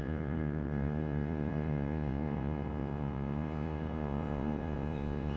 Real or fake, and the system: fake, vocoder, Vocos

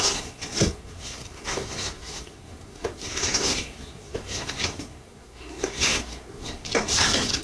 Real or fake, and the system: fake, codec, SNAC